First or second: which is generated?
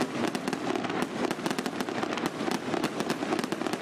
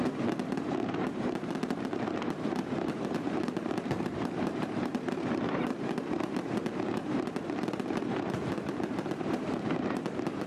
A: second